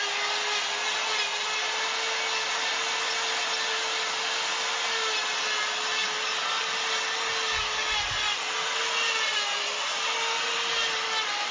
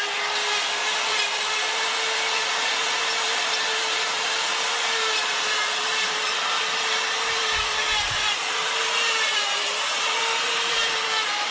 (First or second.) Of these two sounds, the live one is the first